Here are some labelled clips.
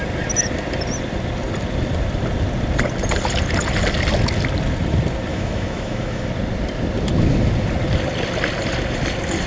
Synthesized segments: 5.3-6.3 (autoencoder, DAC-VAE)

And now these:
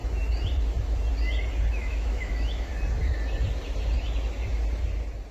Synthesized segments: 1.7-2.7 (autoencoder, DAC-VAE)

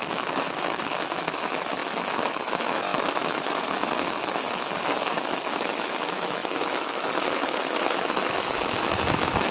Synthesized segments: 0.0-9.5 (autoencoder, DAC-VAE)

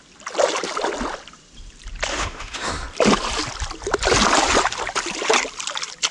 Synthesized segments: 2.1-2.7 (autoencoder, DAC-VAE)

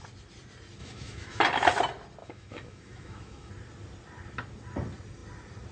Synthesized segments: 0.8-1.4 (autoencoder, DAC-VAE); 2.2-3.5

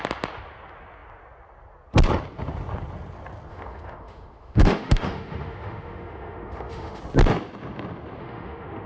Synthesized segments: 3.5-7.0 (autoencoder, DAC-VAE); 8.2-8.9

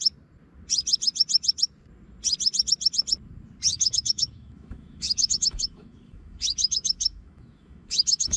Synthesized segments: 3.7-8.4 (autoencoder, DAC-VAE)